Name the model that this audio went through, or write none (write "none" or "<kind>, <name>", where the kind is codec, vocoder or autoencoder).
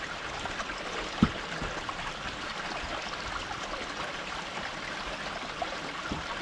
vocoder, BigVGAN v2